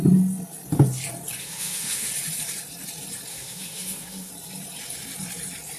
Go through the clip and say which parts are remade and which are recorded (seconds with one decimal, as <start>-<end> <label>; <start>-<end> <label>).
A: 0.0-1.4 recorded; 1.4-2.1 remade; 2.1-3.3 recorded; 3.3-4.3 remade; 4.3-5.8 recorded